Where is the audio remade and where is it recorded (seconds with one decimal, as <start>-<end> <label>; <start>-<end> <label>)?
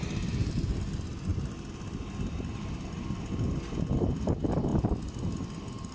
0.0-5.9 recorded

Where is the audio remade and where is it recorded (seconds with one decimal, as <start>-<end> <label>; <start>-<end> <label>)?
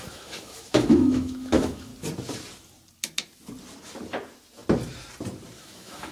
0.0-1.9 remade; 1.9-5.6 recorded; 5.6-6.1 remade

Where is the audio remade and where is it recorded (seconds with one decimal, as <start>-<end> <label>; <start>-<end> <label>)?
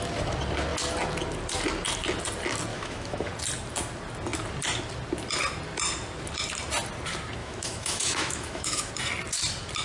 0.0-2.7 recorded; 2.7-3.3 remade; 3.3-7.4 recorded; 7.4-8.9 remade; 8.9-9.8 recorded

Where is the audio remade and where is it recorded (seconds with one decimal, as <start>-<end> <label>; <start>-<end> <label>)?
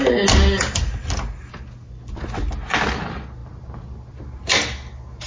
0.0-5.3 recorded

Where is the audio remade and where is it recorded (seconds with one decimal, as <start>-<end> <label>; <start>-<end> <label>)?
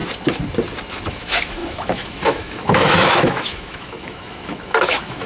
0.0-1.1 recorded; 1.1-5.3 remade